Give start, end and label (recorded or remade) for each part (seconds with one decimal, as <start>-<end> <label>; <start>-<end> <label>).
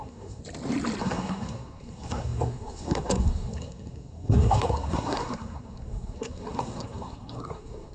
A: 0.0-0.4 remade; 0.4-1.0 recorded; 1.0-7.9 remade